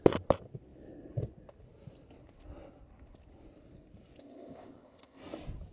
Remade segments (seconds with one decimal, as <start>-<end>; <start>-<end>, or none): 4.2-5.2